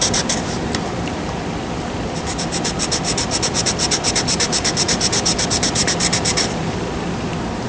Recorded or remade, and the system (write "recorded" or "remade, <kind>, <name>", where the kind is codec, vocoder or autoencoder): remade, vocoder, BigVGAN v2